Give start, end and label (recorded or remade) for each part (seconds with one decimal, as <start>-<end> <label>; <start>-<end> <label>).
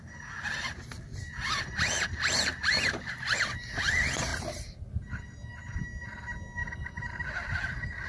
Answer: 0.0-1.1 recorded; 1.1-3.2 remade; 3.2-6.6 recorded; 6.6-7.3 remade; 7.3-8.1 recorded